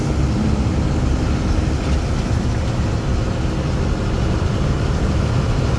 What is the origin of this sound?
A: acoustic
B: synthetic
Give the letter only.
A